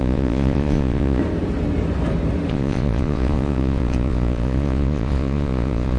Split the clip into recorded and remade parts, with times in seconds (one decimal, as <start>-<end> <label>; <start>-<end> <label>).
0.0-1.2 remade; 1.2-2.5 recorded; 2.5-6.0 remade